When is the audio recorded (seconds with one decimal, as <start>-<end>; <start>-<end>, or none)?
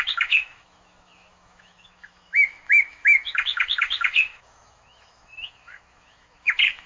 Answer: none